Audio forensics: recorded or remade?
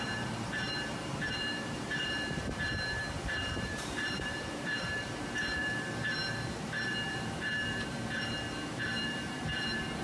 remade